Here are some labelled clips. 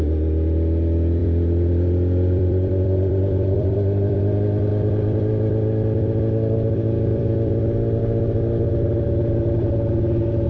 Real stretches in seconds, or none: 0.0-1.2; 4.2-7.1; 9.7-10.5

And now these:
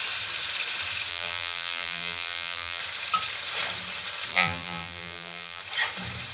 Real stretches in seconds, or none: 0.0-1.1; 2.8-4.3; 5.6-6.3

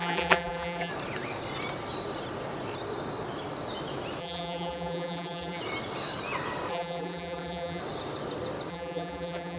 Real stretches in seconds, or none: 0.9-4.2; 5.6-6.7; 7.8-8.7

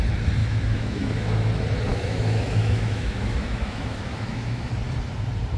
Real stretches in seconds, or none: 0.0-0.4; 1.5-1.9; 4.7-5.6

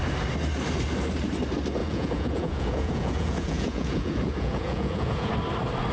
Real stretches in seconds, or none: 0.0-1.8; 5.3-5.9